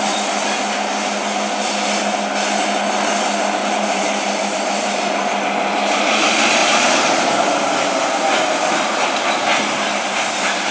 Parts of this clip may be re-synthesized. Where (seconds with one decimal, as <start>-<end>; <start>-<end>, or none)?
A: 3.6-4.6; 6.6-7.9